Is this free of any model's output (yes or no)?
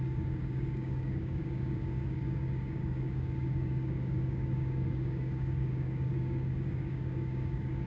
no